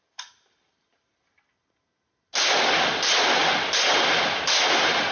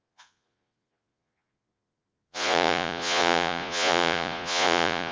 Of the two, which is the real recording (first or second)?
first